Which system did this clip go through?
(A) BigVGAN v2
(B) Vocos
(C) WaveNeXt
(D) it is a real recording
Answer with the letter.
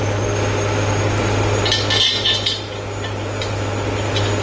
D